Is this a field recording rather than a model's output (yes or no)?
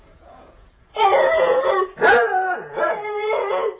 no